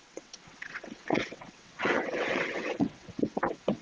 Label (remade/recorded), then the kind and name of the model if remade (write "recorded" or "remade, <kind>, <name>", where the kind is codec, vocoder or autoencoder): remade, vocoder, WaveNeXt